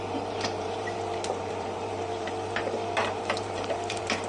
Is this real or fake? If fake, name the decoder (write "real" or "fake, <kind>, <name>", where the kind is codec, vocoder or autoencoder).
fake, vocoder, BigVGAN v2